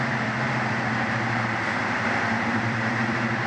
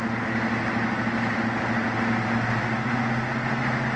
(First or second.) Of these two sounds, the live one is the second